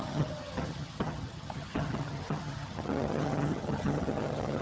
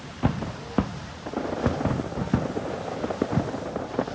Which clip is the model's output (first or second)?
first